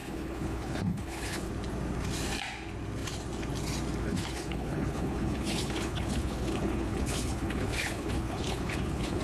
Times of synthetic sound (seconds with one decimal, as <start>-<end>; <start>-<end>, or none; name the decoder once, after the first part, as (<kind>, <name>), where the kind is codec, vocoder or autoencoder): 0.0-1.5 (codec, HILCodec); 4.0-9.2